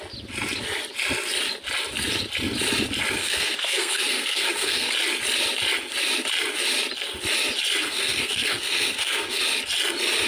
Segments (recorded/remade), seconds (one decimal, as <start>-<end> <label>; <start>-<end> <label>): 0.0-3.2 recorded; 3.2-4.9 remade; 4.9-7.8 recorded; 7.8-9.4 remade; 9.4-10.3 recorded